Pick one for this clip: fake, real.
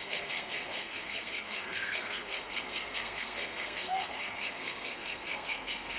fake